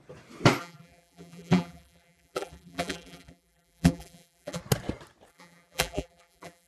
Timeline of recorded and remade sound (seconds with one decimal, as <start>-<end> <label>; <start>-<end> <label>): 0.0-0.6 recorded; 0.6-4.6 remade; 4.6-5.3 recorded; 5.3-6.7 remade